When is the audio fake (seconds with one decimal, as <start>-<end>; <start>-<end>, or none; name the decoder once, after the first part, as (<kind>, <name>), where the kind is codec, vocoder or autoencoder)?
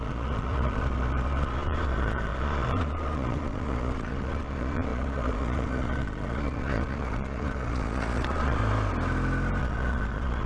0.0-8.6 (vocoder, Vocos); 9.6-10.5